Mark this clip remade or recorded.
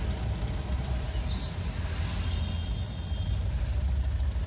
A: recorded